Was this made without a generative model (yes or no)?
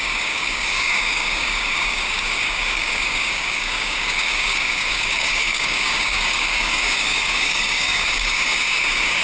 no